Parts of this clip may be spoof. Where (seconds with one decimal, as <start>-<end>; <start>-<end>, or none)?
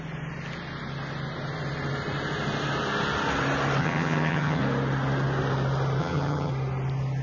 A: 3.8-4.6; 6.0-6.5